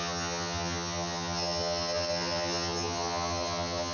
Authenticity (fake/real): fake